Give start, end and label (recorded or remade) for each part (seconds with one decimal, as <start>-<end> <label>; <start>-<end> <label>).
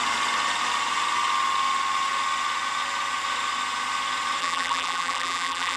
0.0-4.4 recorded; 4.4-5.8 remade